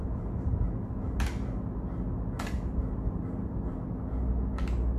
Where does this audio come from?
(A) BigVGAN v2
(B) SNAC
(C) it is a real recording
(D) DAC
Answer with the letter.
C